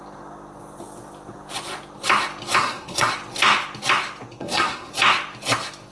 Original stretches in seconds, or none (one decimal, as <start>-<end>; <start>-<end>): 0.0-2.6; 3.1-4.4; 4.9-5.9